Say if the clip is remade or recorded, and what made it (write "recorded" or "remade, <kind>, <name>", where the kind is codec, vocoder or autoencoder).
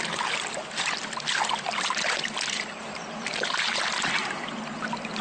recorded